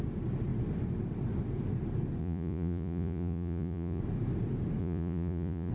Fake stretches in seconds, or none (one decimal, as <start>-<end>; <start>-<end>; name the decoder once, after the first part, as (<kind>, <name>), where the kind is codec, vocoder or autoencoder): 2.2-4.0 (vocoder, Vocos); 4.8-5.7